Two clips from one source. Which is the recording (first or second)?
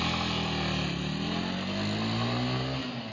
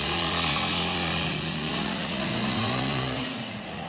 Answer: first